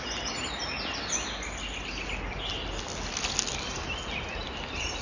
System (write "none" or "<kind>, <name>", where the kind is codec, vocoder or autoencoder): none